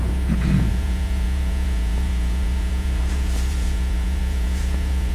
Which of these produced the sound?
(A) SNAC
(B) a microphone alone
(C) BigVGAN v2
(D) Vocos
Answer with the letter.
D